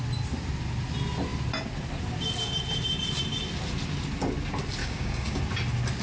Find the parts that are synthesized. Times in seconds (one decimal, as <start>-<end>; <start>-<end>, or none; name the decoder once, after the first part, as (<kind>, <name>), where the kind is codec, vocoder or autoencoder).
4.8-5.4 (codec, DAC)